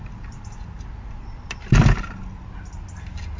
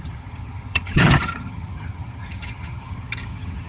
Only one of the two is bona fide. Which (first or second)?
first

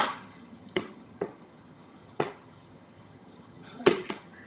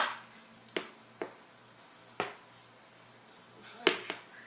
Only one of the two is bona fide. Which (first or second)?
second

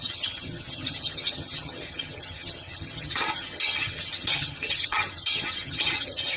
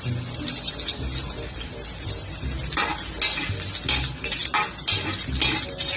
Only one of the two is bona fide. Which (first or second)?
second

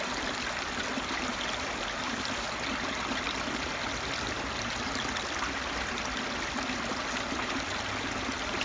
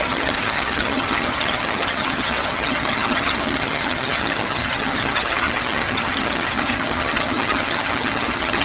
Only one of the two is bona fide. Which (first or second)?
first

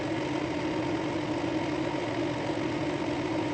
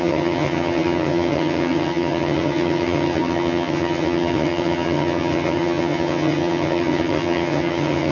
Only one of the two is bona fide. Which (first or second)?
first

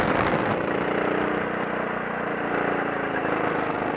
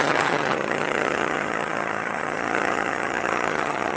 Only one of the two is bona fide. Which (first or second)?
first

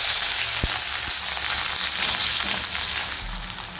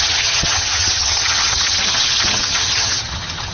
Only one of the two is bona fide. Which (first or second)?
first